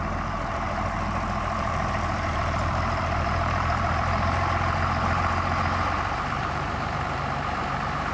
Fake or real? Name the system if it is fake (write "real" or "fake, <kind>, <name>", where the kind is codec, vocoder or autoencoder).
fake, vocoder, BigVGAN v2